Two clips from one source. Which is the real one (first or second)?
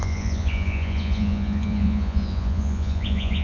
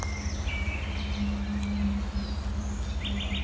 second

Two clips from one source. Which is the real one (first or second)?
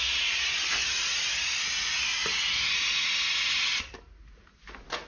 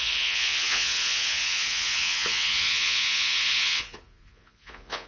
first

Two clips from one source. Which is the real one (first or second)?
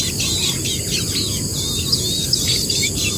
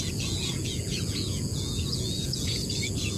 first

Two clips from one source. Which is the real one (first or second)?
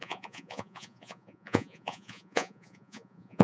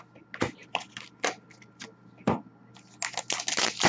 second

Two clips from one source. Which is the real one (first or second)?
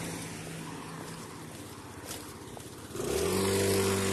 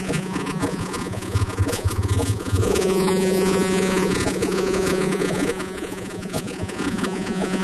first